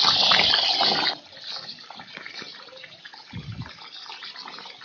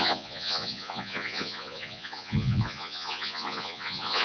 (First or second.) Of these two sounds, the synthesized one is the second